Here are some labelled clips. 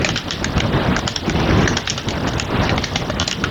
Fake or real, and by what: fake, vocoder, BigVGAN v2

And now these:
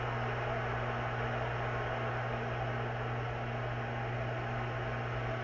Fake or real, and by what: real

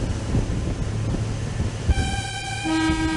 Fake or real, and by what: real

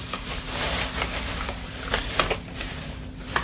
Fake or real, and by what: fake, vocoder, BigVGAN v2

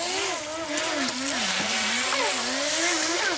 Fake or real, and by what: real